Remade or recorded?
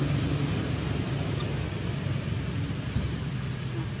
recorded